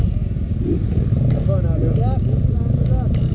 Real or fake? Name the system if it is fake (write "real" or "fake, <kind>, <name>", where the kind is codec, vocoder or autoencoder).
real